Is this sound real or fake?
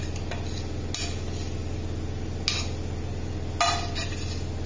real